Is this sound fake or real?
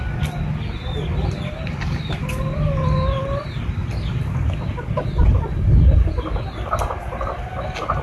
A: real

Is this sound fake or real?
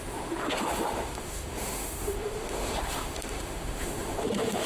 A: fake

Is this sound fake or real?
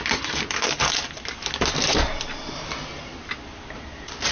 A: real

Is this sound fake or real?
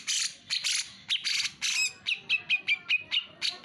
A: real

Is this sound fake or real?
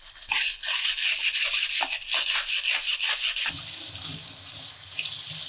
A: real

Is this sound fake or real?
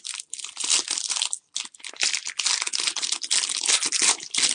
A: real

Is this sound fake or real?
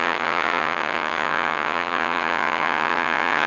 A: fake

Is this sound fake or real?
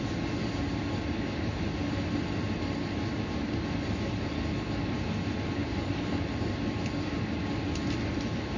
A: real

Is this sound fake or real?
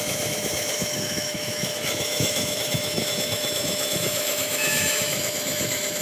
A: fake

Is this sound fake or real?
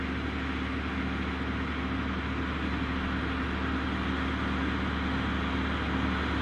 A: real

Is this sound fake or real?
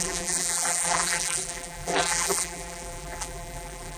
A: fake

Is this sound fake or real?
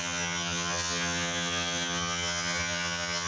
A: fake